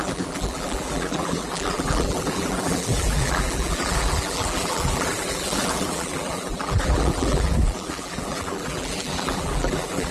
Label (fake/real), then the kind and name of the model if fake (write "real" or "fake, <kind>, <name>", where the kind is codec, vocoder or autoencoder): fake, vocoder, BigVGAN v2